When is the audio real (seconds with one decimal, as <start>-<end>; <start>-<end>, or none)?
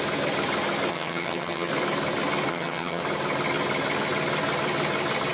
0.0-0.9; 1.7-2.5; 3.0-5.3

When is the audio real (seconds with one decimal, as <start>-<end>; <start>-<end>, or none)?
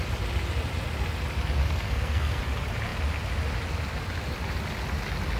0.0-1.6; 2.4-5.4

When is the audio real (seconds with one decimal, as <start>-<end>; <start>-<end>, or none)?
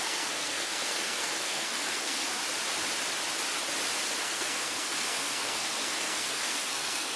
2.4-4.2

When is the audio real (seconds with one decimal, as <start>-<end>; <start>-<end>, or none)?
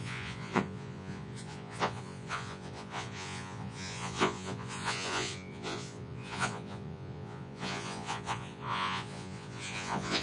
none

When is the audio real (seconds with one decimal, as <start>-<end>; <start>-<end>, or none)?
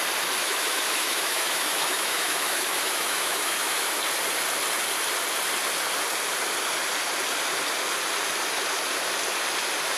0.0-0.4; 4.0-10.0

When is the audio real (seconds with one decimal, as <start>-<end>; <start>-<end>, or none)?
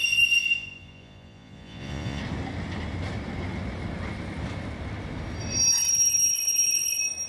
2.2-7.3